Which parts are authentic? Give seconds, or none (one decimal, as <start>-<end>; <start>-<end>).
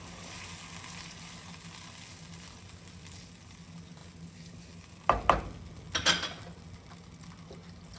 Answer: 0.0-8.0